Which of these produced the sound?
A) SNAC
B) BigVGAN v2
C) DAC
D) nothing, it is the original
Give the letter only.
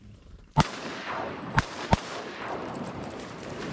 B